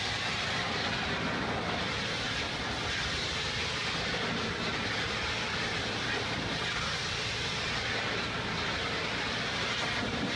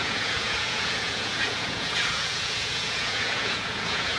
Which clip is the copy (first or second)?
second